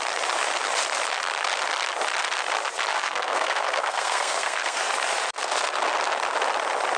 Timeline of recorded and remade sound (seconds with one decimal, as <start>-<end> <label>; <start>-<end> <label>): 0.0-2.9 recorded; 2.9-4.8 remade; 4.8-7.0 recorded